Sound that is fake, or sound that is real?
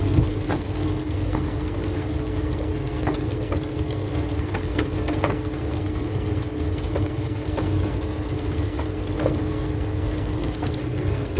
fake